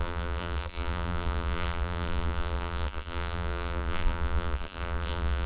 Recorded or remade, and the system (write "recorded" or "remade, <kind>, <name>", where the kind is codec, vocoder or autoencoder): remade, vocoder, BigVGAN v2